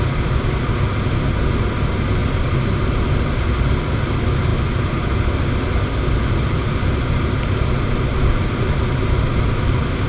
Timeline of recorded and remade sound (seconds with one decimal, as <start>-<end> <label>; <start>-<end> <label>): 0.0-10.1 recorded